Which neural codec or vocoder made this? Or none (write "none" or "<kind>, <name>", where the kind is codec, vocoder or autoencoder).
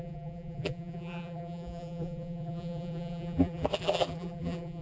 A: vocoder, BigVGAN v2